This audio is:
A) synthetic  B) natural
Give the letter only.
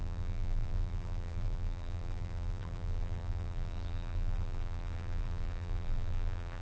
A